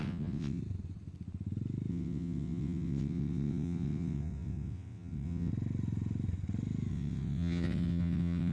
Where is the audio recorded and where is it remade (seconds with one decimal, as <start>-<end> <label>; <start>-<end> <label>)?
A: 0.0-0.6 remade; 0.6-1.9 recorded; 1.9-5.5 remade; 5.5-6.9 recorded; 6.9-8.5 remade